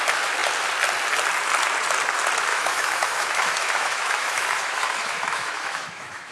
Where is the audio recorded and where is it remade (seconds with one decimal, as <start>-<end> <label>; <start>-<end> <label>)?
0.0-2.5 recorded; 2.5-6.3 remade